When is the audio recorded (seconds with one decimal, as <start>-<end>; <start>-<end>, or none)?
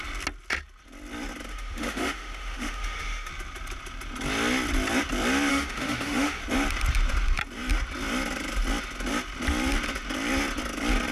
0.0-1.5; 3.3-5.5; 6.4-11.1